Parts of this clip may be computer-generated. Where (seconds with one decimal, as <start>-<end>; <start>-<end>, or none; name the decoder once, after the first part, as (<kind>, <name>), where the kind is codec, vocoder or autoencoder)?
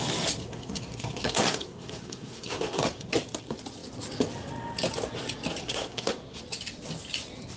0.4-3.1 (codec, SNAC); 5.6-6.4